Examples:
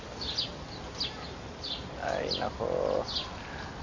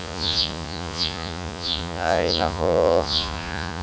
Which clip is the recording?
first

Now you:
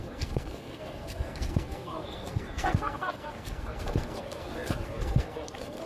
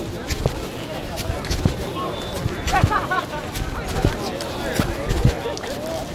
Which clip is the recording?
second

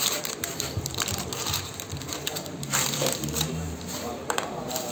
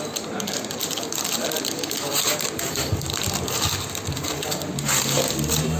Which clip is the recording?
second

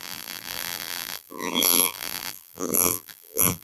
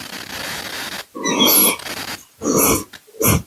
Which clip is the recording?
second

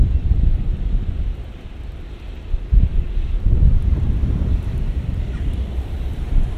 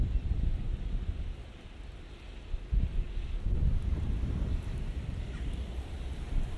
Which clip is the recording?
second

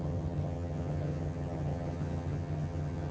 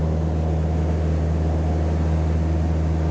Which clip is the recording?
second